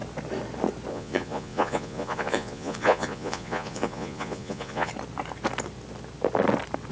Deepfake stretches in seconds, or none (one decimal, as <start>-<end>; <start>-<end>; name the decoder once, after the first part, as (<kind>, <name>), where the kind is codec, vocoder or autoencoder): 0.9-4.9 (vocoder, Vocos)